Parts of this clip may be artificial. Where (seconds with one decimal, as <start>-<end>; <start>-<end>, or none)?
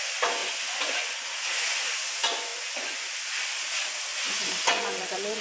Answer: 0.4-1.9; 2.5-3.1; 4.1-5.4